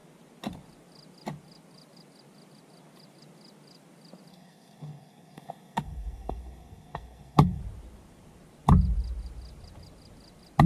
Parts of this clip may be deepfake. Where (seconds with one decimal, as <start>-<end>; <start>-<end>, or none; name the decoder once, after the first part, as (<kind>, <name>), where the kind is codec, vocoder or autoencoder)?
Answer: 4.3-7.6 (codec, SNAC)